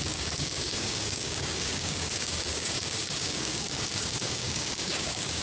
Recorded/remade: remade